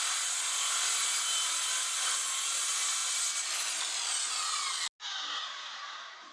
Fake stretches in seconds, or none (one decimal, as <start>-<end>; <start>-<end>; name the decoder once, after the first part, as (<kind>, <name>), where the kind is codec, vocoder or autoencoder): none